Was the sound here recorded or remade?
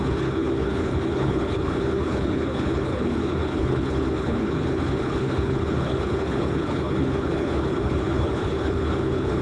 remade